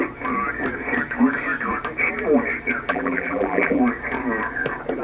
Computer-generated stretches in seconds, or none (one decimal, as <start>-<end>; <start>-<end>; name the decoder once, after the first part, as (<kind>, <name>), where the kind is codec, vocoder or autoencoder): 2.9-3.8 (vocoder, BigVGAN v2)